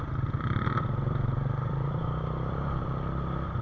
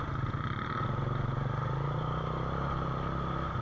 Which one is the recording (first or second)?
second